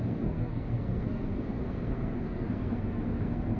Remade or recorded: remade